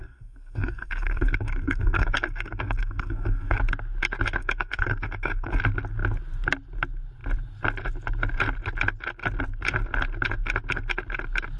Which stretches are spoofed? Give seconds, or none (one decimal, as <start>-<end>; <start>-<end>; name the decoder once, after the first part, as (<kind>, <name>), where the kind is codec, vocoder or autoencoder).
0.0-3.6 (codec, SNAC); 4.4-5.6